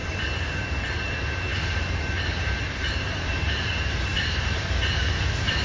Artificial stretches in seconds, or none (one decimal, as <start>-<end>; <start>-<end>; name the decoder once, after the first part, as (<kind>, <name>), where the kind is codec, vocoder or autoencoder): 0.0-5.6 (vocoder, BigVGAN v2)